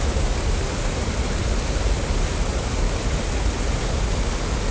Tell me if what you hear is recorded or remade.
recorded